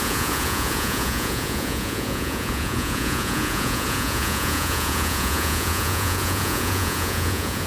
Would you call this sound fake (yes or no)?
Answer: yes